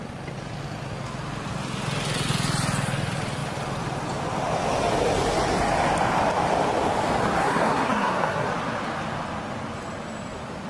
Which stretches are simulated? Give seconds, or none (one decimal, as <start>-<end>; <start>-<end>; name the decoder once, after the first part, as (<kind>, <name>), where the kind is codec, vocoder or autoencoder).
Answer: 7.4-8.5 (codec, SNAC)